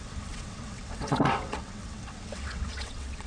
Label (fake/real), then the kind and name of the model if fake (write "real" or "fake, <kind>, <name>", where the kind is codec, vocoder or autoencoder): fake, vocoder, WaveNeXt